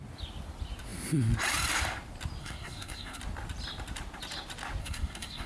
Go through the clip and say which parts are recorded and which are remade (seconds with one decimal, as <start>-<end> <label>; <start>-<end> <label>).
0.0-2.4 recorded; 2.4-3.2 remade; 3.2-4.8 recorded; 4.8-5.5 remade